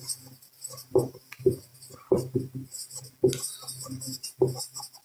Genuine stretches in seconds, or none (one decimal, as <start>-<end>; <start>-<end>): 0.0-5.0

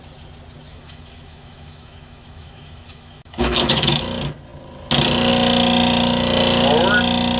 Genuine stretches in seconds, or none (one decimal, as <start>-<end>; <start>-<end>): 0.0-0.7; 4.0-7.4

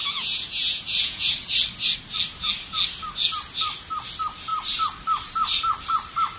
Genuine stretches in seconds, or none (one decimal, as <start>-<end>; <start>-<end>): 1.3-6.4

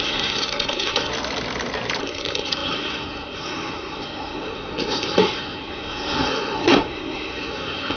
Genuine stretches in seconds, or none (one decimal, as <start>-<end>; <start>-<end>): 1.1-2.0

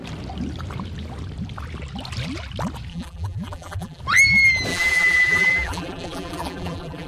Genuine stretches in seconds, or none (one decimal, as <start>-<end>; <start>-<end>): 0.0-2.9; 4.0-4.7

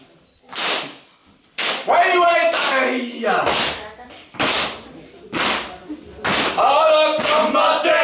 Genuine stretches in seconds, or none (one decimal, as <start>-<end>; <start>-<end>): 0.0-1.2; 1.7-8.0

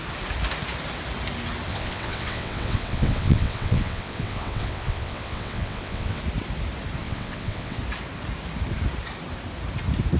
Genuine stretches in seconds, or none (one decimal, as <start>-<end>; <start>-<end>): 0.0-1.7; 6.2-7.0; 7.8-10.2

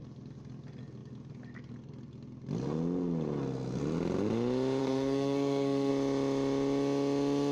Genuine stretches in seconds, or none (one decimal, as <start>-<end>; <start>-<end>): 0.0-4.8; 5.9-7.5